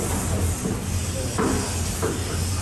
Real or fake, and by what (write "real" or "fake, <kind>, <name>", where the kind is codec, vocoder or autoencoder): real